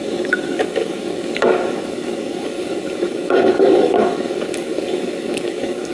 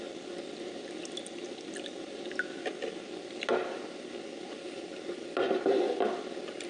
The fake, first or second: first